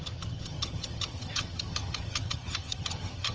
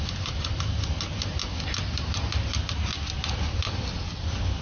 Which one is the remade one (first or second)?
first